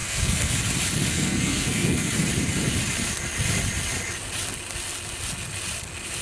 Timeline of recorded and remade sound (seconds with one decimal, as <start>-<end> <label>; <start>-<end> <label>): 0.0-0.6 remade; 0.6-1.1 recorded; 1.1-2.1 remade; 2.1-6.2 recorded